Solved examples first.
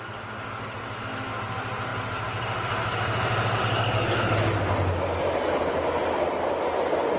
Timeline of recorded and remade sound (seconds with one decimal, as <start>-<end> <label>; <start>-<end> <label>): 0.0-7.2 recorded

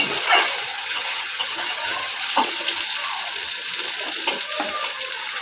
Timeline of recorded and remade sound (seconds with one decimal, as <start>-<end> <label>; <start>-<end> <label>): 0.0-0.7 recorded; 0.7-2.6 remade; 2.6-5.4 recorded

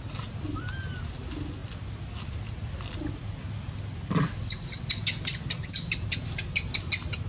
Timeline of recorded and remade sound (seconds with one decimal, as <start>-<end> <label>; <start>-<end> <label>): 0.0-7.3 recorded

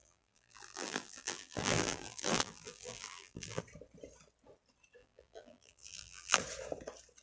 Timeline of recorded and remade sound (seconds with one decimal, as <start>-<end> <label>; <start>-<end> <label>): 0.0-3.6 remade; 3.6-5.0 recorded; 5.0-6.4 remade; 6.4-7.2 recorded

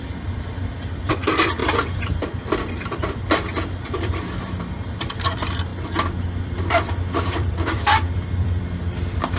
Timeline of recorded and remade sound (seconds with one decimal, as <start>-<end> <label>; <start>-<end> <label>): 0.0-5.7 remade; 5.7-6.4 recorded; 6.4-9.4 remade

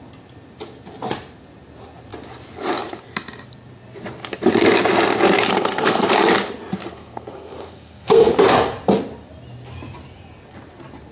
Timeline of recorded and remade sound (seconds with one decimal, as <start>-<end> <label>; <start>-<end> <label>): 0.0-5.5 recorded; 5.5-6.1 remade; 6.1-6.9 recorded; 6.9-8.3 remade; 8.3-11.1 recorded

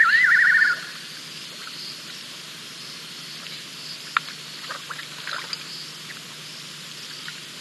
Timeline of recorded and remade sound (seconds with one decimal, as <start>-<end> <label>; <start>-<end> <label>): 0.0-7.6 recorded